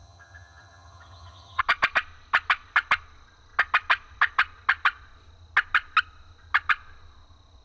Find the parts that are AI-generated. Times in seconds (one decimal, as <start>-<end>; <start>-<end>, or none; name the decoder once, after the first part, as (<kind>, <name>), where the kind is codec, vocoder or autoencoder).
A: 0.0-1.6 (vocoder, HiFi-GAN)